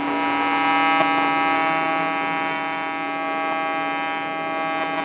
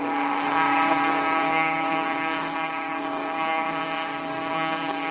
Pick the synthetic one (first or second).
second